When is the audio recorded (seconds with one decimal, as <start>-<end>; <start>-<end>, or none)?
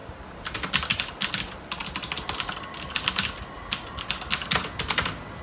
0.0-5.4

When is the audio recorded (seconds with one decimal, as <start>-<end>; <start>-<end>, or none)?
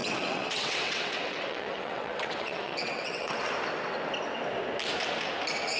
3.5-5.8